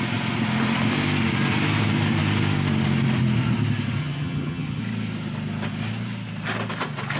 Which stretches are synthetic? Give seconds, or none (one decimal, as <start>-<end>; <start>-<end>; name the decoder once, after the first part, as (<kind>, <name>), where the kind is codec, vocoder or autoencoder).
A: 4.0-4.8 (vocoder, HiFi-GAN)